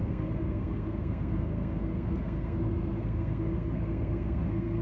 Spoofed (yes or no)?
yes